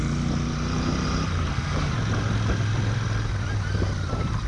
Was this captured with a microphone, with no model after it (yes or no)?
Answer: yes